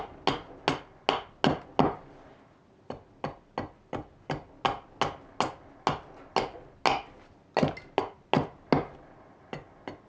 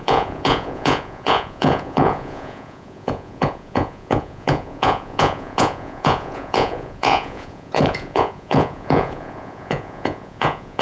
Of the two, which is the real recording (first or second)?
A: first